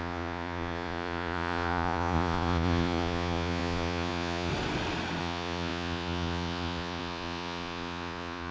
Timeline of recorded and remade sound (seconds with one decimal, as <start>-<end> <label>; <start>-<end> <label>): 0.0-4.5 remade; 4.5-5.2 recorded; 5.2-8.5 remade